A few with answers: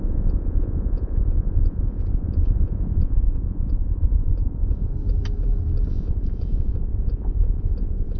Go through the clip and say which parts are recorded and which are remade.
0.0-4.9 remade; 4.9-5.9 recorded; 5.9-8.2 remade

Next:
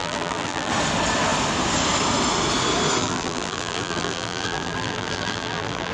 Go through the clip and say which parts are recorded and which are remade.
0.0-0.7 remade; 0.7-3.0 recorded; 3.0-5.9 remade

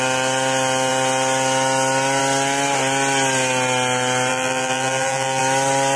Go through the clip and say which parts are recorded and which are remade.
0.0-4.3 recorded; 4.3-5.4 remade; 5.4-6.0 recorded